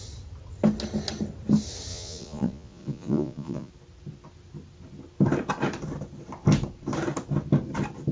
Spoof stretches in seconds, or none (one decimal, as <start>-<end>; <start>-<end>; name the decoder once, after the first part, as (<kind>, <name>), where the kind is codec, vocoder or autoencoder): 1.9-3.7 (vocoder, Vocos)